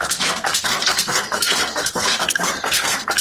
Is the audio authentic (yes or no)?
no